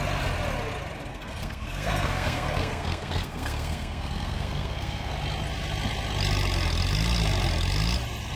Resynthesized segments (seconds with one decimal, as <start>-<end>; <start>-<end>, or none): 1.1-5.1

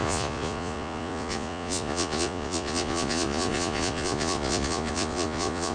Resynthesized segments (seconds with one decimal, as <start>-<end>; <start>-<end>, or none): 0.0-5.7